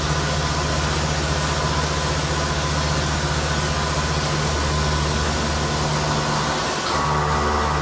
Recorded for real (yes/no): yes